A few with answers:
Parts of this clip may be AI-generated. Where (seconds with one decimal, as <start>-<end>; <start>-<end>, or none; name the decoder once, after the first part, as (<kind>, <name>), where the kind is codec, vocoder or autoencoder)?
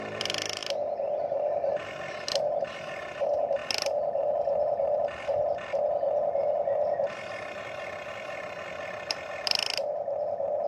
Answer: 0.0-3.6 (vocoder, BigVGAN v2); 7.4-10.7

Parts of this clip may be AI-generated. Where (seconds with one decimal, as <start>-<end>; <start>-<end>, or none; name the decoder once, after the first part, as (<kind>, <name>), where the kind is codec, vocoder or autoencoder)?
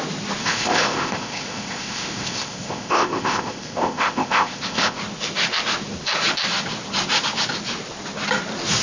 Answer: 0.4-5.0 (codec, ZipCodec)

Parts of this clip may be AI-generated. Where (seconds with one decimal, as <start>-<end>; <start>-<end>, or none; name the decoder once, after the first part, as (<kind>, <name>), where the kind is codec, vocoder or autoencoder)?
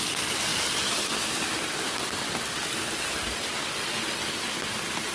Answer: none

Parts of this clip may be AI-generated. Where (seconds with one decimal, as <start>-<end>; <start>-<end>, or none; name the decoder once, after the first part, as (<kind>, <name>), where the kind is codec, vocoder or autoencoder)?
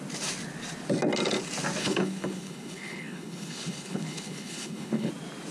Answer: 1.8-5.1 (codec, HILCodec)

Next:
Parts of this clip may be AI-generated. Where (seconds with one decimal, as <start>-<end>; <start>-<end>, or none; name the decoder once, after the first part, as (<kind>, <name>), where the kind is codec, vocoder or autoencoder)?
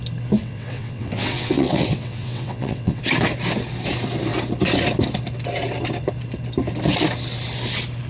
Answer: 0.4-3.0 (vocoder, WaveNeXt)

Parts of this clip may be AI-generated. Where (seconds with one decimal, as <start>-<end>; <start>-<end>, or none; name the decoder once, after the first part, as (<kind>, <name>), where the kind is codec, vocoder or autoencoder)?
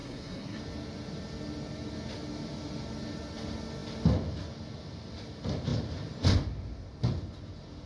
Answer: 0.0-0.6 (codec, SNAC)